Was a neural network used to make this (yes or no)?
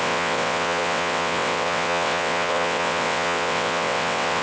yes